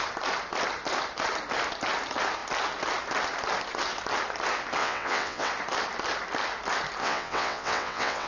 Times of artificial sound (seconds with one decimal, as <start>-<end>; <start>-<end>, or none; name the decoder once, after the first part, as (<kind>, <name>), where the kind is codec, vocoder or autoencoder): 4.8-5.5 (vocoder, WaveNeXt); 7.0-8.3